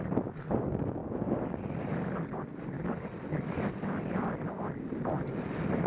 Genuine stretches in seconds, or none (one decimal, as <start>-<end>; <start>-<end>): 0.0-5.9